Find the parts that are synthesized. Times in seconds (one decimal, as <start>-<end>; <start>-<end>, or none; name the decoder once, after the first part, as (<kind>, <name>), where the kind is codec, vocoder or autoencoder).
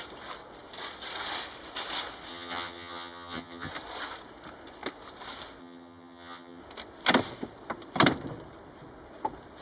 2.3-3.7 (vocoder, HiFi-GAN); 5.6-6.6